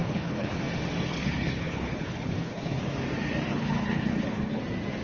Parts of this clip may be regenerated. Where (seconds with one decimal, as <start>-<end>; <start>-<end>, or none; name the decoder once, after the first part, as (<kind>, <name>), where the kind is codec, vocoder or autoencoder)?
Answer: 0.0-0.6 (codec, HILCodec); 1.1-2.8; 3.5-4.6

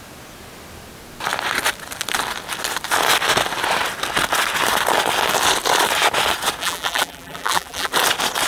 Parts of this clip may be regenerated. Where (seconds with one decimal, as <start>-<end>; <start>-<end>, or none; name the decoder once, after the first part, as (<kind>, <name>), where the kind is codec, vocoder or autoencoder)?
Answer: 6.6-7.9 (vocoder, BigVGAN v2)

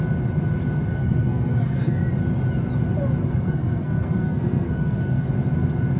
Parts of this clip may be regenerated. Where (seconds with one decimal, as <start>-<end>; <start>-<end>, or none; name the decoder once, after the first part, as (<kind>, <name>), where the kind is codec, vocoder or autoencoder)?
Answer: 0.9-2.0 (codec, SNAC); 3.2-5.3

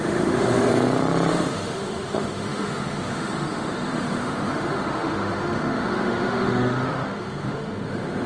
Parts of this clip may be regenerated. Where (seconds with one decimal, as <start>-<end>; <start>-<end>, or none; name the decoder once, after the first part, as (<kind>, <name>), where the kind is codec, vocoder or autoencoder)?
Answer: 0.0-0.7 (autoencoder, DAC-VAE); 1.3-8.3

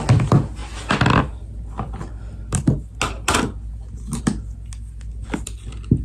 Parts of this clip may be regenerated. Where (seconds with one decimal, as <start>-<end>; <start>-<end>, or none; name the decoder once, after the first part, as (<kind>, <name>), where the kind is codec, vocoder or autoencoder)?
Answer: none